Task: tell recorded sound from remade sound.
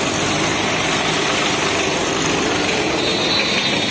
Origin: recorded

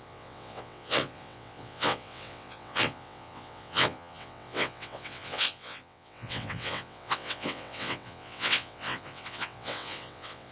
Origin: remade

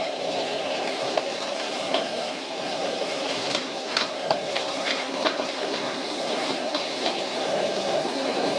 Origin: remade